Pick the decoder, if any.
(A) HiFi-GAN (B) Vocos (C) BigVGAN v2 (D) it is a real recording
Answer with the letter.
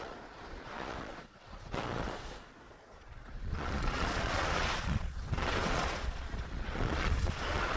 B